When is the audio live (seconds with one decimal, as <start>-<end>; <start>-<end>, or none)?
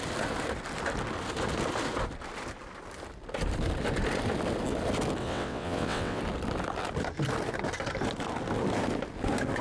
0.0-5.2; 6.2-9.6